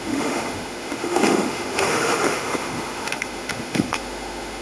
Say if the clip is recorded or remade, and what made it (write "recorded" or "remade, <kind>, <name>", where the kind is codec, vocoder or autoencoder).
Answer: remade, autoencoder, DAC-VAE